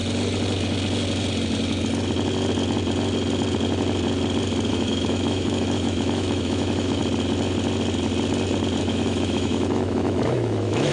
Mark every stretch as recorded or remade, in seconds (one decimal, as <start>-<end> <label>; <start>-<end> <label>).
0.0-4.7 recorded; 4.7-7.0 remade; 7.0-8.8 recorded; 8.8-10.9 remade